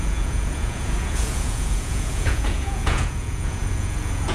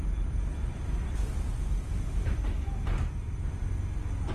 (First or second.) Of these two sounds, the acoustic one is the second